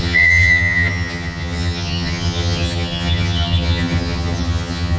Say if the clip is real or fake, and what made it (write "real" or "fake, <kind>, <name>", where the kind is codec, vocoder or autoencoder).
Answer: fake, vocoder, HiFi-GAN